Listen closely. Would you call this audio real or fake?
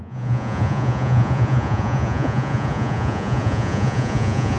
fake